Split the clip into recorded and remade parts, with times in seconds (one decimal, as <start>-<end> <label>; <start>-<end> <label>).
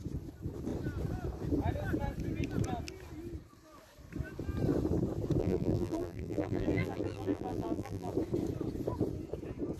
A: 0.0-5.4 recorded; 5.4-8.1 remade; 8.1-9.8 recorded